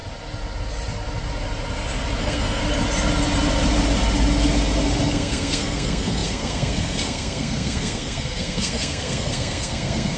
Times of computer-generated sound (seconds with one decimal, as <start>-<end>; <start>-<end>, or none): 2.2-2.6; 5.1-10.2